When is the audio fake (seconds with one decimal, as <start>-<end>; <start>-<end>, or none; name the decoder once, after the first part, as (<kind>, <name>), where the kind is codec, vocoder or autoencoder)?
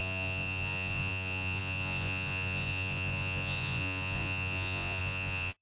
0.0-5.6 (vocoder, Vocos)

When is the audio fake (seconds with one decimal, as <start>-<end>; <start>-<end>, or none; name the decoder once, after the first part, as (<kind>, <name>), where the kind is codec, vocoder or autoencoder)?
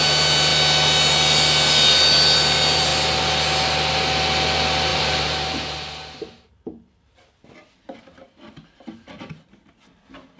4.9-7.2 (vocoder, BigVGAN v2)